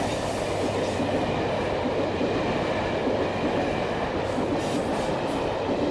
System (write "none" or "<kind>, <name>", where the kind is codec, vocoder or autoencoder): none